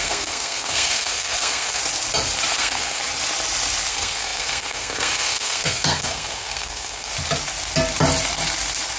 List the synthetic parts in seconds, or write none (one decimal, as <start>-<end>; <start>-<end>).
0.0-1.8; 2.5-3.0; 3.9-7.1